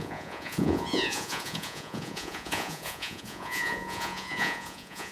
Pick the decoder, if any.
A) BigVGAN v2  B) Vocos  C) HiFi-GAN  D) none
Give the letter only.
B